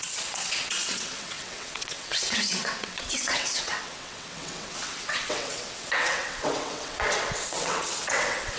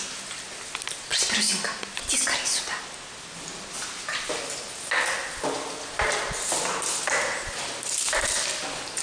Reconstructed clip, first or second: first